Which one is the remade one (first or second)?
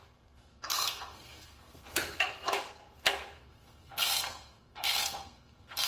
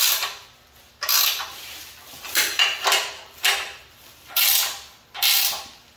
first